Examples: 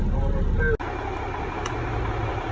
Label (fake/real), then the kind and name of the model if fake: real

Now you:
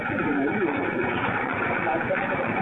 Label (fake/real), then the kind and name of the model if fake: fake, vocoder, Vocos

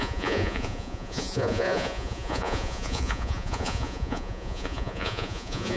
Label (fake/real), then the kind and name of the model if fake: fake, vocoder, Vocos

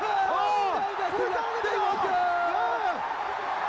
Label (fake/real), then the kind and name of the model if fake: real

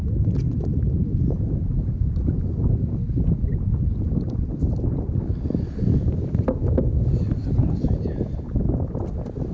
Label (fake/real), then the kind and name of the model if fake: real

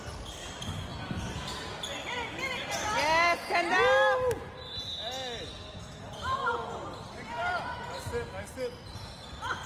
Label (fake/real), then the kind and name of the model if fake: real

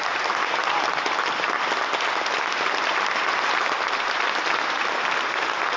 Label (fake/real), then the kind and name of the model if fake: real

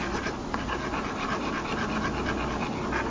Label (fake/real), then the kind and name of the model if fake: real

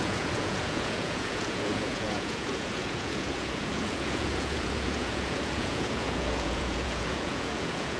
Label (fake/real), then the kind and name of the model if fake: fake, vocoder, Vocos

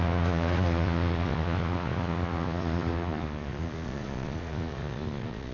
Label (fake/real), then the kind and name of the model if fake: fake, vocoder, Vocos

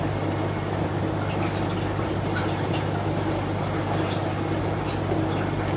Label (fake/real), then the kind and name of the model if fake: real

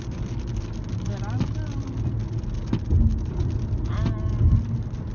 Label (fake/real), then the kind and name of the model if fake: real